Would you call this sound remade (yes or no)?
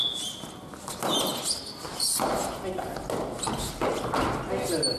no